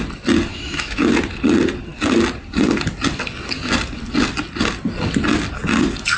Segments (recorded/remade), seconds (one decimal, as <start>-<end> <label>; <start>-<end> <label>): 0.0-0.5 recorded; 0.5-1.1 remade; 1.1-6.2 recorded